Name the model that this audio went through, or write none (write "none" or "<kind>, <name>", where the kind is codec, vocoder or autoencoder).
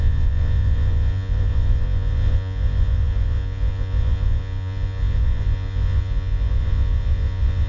vocoder, Vocos